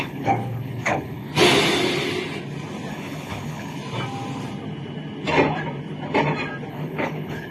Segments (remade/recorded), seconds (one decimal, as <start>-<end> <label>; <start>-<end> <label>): 0.0-1.3 remade; 1.3-2.9 recorded; 2.9-3.8 remade; 3.8-6.7 recorded; 6.7-7.5 remade